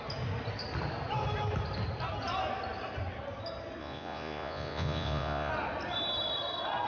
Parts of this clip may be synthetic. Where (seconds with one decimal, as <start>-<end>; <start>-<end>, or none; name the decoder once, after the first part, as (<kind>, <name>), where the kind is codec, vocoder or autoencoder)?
3.8-5.5 (vocoder, Vocos)